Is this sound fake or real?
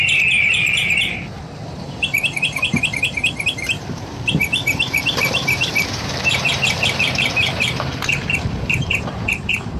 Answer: fake